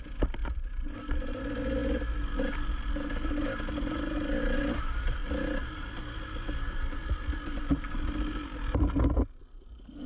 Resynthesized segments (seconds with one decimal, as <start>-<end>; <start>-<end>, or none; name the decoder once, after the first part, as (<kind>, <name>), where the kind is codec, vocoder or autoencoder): 0.4-1.4 (vocoder, BigVGAN v2)